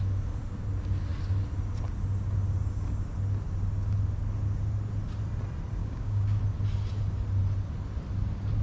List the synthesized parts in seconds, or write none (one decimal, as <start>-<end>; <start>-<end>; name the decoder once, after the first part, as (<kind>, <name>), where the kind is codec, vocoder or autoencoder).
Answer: 5.8-6.4 (codec, DAC)